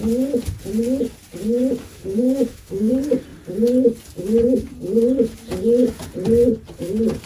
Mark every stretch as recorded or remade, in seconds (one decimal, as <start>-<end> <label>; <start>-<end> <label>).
0.0-1.8 recorded; 1.8-2.9 remade; 2.9-7.3 recorded